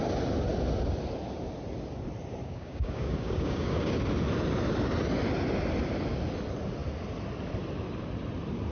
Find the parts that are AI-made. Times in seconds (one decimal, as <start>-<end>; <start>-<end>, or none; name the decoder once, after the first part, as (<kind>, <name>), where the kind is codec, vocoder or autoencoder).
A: 2.4-3.9 (codec, DAC)